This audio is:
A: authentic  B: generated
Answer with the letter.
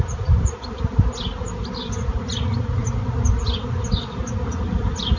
A